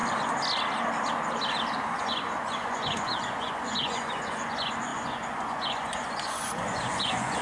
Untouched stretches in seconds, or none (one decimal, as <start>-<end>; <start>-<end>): 0.0-2.0